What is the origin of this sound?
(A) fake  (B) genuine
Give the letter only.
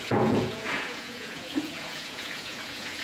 A